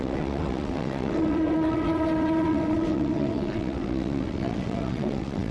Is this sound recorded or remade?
remade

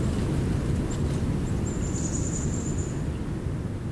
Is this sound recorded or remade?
recorded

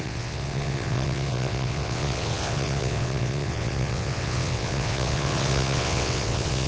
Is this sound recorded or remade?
remade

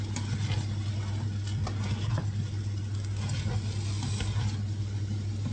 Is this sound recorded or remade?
recorded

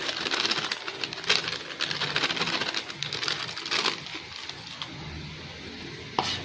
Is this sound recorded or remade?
recorded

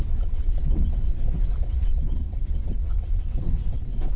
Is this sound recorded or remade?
remade